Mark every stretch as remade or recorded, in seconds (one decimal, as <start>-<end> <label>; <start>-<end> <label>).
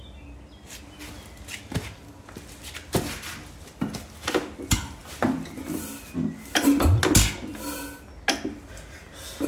0.0-9.5 recorded